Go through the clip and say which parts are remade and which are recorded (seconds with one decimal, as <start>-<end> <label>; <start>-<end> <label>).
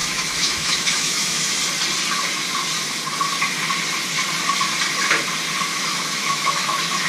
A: 0.0-1.6 remade; 1.6-5.7 recorded; 5.7-7.1 remade